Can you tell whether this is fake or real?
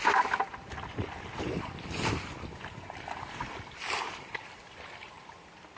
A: real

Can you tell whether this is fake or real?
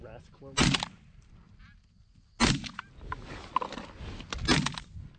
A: real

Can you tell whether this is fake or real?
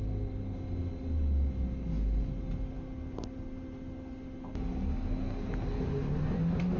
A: real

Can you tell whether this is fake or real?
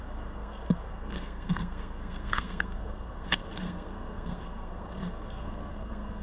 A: fake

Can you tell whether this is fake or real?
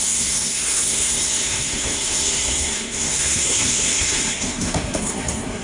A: fake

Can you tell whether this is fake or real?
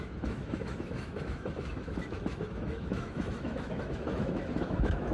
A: fake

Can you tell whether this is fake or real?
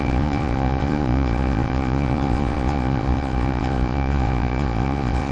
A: fake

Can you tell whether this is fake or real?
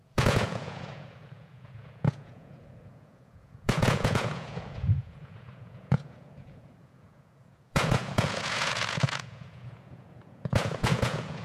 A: fake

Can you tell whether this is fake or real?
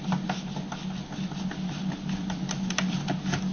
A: real